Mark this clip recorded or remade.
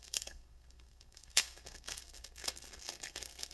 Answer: remade